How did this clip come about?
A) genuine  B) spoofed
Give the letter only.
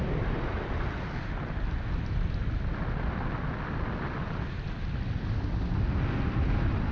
A